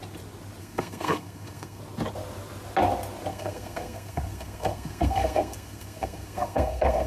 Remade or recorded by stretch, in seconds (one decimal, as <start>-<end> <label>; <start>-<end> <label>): 0.0-0.6 recorded; 0.6-1.8 remade; 1.8-3.3 recorded; 3.3-7.1 remade